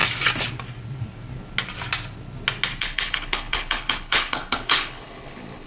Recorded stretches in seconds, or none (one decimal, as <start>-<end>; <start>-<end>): 0.0-2.8